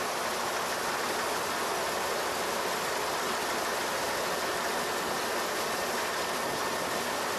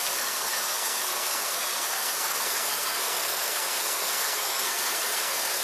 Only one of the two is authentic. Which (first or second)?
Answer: first